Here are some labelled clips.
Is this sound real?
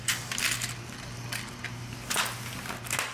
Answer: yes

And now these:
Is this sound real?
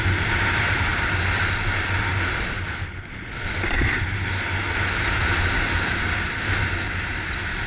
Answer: yes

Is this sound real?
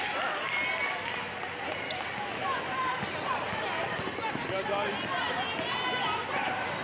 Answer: yes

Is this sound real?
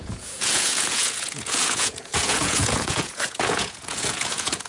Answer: no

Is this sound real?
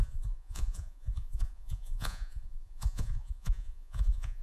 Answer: no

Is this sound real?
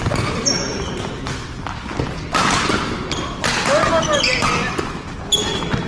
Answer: yes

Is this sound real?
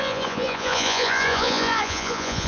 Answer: no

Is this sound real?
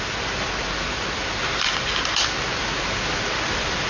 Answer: yes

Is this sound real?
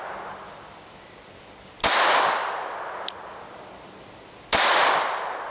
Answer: yes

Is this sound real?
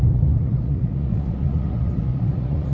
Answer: no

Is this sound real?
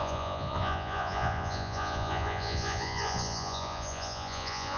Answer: no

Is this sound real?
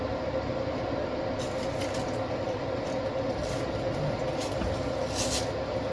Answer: yes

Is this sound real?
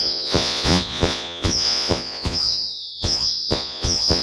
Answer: no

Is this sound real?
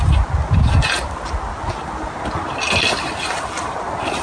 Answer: yes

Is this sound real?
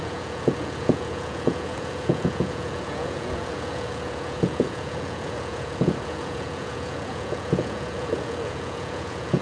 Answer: no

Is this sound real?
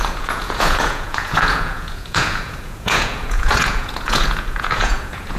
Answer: no